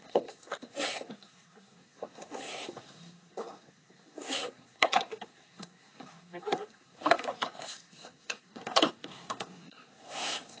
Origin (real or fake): fake